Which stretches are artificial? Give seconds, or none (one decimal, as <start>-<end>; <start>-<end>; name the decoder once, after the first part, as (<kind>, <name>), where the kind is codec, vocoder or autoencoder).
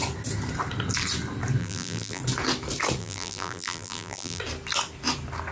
1.6-2.2 (vocoder, BigVGAN v2); 3.0-4.4